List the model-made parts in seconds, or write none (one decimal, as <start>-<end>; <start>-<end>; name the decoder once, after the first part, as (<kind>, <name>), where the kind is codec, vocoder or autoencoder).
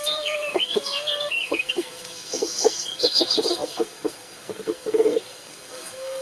0.0-6.2 (codec, SNAC)